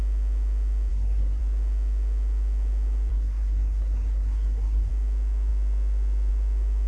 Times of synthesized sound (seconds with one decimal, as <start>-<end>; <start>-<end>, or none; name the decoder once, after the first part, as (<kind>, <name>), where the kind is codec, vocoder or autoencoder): 0.9-1.4 (codec, SNAC); 3.1-4.9